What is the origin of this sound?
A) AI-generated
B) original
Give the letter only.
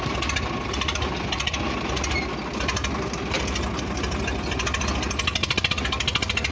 B